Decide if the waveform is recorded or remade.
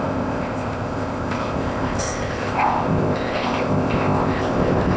remade